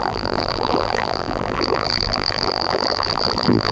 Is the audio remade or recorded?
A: remade